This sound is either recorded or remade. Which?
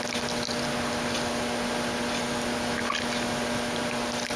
recorded